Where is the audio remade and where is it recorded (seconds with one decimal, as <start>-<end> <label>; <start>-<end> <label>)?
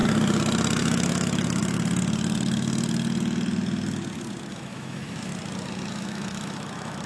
0.0-0.8 recorded; 0.8-1.6 remade; 1.6-4.5 recorded; 4.5-5.3 remade; 5.3-5.9 recorded; 5.9-7.1 remade